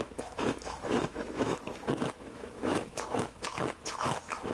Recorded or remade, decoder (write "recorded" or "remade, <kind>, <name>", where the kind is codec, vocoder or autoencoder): remade, autoencoder, DAC-VAE